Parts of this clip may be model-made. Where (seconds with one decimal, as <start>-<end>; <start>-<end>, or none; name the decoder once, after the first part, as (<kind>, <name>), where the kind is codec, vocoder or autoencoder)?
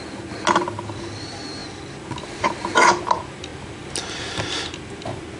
none